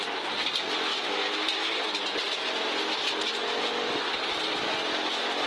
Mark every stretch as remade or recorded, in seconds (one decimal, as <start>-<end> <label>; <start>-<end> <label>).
0.0-5.5 recorded

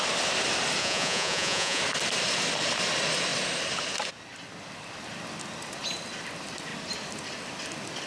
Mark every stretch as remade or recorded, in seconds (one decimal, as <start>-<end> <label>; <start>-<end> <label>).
0.0-0.8 recorded; 0.8-1.8 remade; 1.8-8.1 recorded

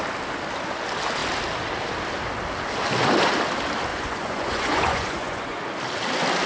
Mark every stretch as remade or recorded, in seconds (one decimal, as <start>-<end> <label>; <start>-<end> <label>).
0.0-3.9 recorded; 3.9-5.6 remade; 5.6-6.5 recorded